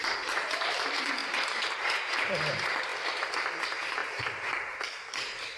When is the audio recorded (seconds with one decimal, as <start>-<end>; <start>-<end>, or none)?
2.9-3.4